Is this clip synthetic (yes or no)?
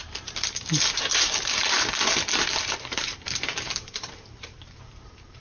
yes